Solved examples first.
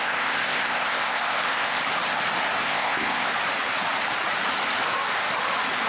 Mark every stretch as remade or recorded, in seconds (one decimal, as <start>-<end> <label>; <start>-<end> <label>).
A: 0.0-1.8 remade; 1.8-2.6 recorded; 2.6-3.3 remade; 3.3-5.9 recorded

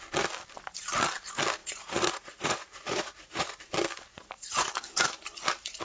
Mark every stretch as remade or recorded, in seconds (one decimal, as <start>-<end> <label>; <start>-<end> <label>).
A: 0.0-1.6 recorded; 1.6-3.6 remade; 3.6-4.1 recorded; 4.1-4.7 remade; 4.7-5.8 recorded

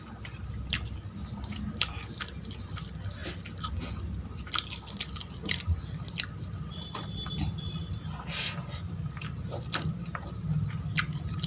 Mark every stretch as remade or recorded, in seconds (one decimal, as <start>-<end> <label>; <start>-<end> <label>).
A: 0.0-11.5 recorded

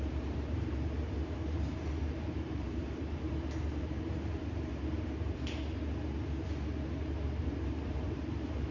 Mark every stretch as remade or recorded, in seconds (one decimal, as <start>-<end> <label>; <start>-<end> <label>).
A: 0.0-5.6 remade; 5.6-7.4 recorded; 7.4-8.7 remade

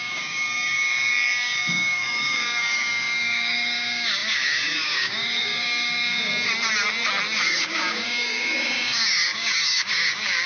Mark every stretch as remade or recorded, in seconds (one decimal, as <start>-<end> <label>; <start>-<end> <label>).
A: 0.0-6.3 remade; 6.3-7.4 recorded; 7.4-10.5 remade

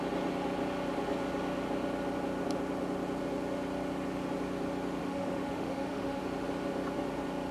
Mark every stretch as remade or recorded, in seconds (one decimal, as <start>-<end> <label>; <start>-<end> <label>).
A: 0.0-5.0 recorded; 5.0-6.2 remade; 6.2-7.5 recorded